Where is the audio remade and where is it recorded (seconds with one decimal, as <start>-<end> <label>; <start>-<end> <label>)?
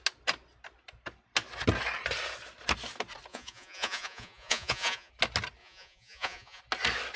0.0-3.3 recorded; 3.3-5.1 remade; 5.1-5.6 recorded; 5.6-6.6 remade; 6.6-7.2 recorded